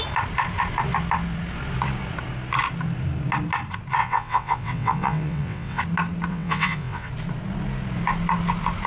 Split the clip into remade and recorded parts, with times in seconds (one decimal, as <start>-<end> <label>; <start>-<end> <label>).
0.0-4.0 recorded; 4.0-5.8 remade; 5.8-6.3 recorded; 6.3-7.1 remade; 7.1-8.9 recorded